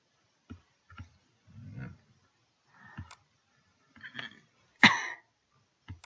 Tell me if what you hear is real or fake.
real